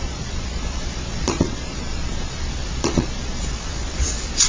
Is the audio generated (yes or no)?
yes